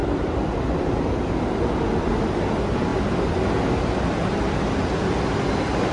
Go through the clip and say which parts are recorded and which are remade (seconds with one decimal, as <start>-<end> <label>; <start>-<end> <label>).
0.0-5.9 recorded